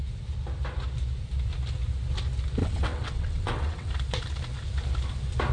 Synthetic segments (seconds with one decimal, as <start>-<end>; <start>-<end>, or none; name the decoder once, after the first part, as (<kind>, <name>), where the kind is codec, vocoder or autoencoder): 2.6-3.9 (vocoder, WaveNeXt)